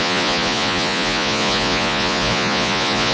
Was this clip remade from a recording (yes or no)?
yes